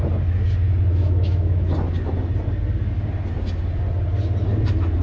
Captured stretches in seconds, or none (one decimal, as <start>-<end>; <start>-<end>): 0.0-0.9; 1.7-5.0